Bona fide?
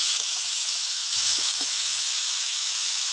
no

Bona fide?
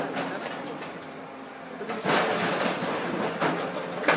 yes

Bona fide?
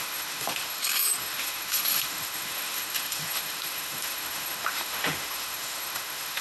no